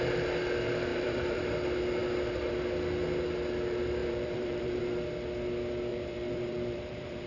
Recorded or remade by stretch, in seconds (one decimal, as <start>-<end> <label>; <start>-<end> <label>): 0.0-0.9 recorded; 0.9-1.4 remade; 1.4-4.0 recorded; 4.0-4.8 remade; 4.8-5.9 recorded; 5.9-7.3 remade